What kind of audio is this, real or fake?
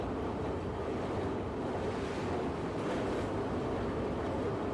real